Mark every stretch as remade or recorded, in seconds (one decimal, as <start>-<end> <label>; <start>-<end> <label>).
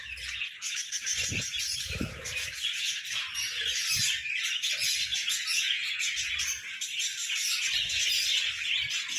0.0-5.1 recorded; 5.1-6.3 remade; 6.3-9.2 recorded